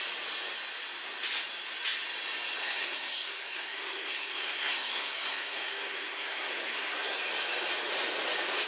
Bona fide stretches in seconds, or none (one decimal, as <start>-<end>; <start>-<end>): 0.0-2.6; 7.2-8.7